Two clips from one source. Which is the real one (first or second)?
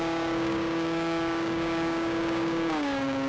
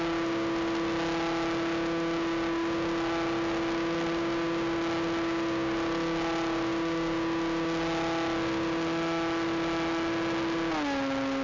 second